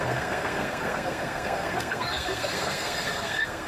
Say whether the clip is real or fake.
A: fake